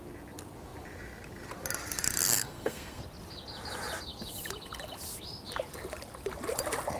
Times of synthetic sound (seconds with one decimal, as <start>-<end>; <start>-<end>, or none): 2.3-3.0